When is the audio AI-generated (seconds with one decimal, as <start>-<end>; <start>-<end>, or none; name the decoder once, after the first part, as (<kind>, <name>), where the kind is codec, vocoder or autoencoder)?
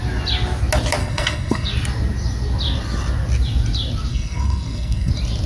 1.0-1.7 (codec, SNAC); 4.1-5.1